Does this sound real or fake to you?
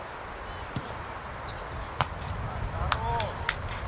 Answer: real